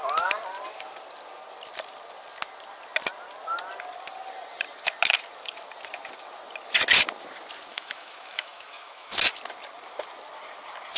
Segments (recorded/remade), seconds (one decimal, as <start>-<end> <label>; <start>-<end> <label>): 0.0-7.7 recorded; 7.7-9.1 remade; 9.1-11.0 recorded